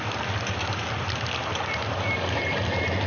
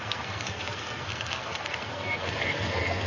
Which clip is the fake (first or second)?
second